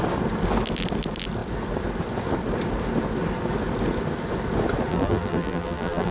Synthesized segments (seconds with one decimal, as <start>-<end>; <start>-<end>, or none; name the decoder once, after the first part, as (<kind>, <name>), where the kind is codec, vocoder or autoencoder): 4.9-6.1 (vocoder, BigVGAN v2)